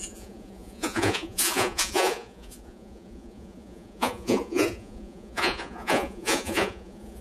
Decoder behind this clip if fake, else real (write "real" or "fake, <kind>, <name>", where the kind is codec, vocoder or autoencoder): fake, vocoder, Vocos